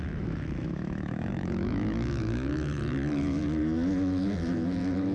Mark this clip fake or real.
fake